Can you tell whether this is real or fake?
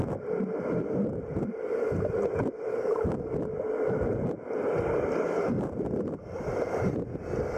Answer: real